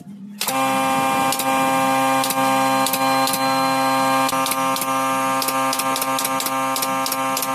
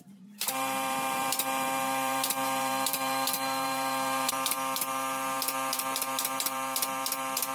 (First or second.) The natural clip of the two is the first